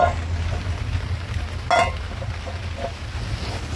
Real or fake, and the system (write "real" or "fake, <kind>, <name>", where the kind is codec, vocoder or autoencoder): real